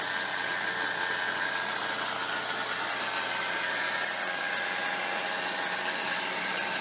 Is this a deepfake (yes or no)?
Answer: no